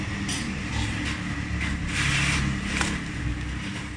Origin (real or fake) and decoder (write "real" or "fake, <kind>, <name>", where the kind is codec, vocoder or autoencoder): real